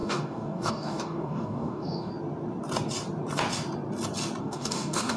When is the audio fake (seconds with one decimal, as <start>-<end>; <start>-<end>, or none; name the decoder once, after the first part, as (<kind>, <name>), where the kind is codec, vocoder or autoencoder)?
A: 0.0-2.1 (codec, DAC); 4.4-5.2